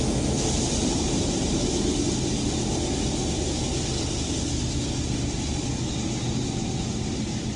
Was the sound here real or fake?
real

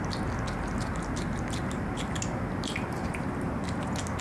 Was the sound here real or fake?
real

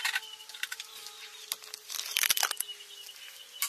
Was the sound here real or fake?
real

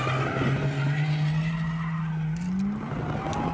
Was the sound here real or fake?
real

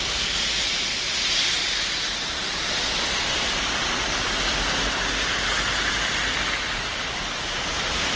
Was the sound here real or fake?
real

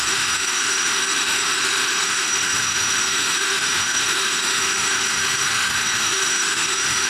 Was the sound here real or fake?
fake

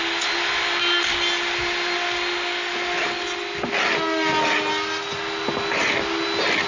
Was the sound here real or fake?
real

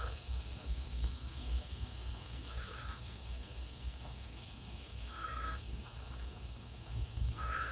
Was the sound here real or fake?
fake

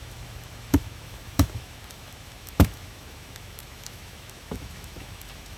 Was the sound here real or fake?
fake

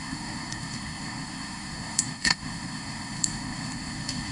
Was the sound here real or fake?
fake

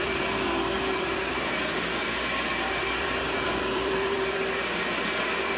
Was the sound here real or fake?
fake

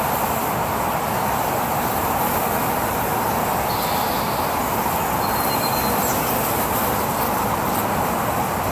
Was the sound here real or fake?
real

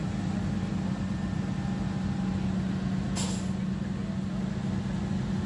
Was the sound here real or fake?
real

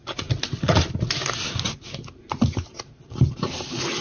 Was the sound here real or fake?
real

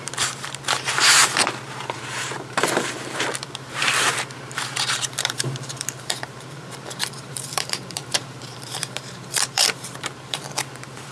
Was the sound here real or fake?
fake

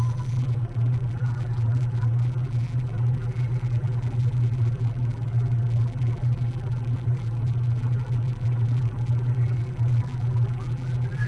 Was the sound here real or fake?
fake